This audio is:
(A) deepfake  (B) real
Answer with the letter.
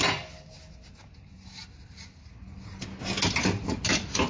B